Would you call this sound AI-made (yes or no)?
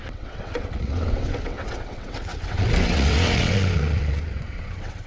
yes